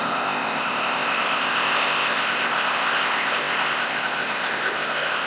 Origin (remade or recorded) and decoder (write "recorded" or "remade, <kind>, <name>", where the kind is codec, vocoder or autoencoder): remade, codec, ZipCodec